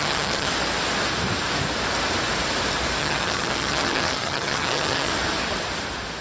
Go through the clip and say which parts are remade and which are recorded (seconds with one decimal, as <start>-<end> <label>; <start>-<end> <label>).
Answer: 0.0-0.5 remade; 0.5-3.0 recorded; 3.0-5.1 remade; 5.1-6.2 recorded